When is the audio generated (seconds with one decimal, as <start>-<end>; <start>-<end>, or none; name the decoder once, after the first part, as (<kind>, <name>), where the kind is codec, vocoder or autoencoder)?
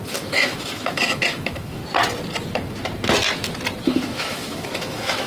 0.0-1.8 (autoencoder, DAC-VAE); 3.8-5.3